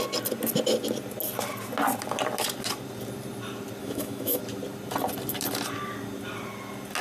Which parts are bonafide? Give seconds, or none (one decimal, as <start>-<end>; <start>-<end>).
0.0-3.8; 4.4-7.0

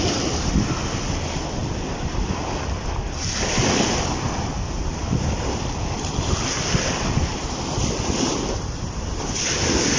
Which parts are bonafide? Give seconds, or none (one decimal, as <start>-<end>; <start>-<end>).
0.0-10.0